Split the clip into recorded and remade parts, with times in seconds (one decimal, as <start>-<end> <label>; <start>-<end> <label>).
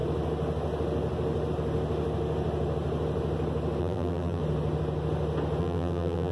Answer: 0.0-3.8 recorded; 3.8-4.4 remade; 4.4-5.6 recorded; 5.6-6.3 remade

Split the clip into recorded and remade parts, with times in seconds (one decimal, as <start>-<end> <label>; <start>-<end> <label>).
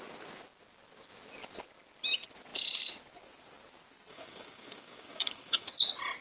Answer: 0.0-4.1 recorded; 4.1-5.7 remade; 5.7-6.2 recorded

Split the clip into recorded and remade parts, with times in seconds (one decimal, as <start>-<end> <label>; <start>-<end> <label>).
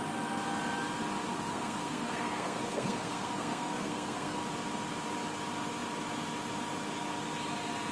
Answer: 0.0-1.3 recorded; 1.3-4.4 remade; 4.4-7.9 recorded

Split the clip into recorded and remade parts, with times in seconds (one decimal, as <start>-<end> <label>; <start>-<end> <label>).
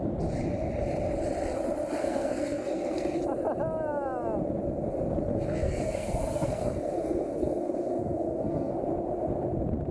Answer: 0.0-2.0 recorded; 2.0-3.2 remade; 3.2-5.3 recorded; 5.3-8.7 remade; 8.7-9.9 recorded